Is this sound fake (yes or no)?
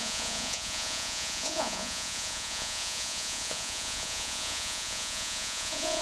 yes